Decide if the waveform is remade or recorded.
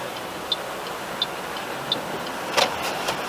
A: recorded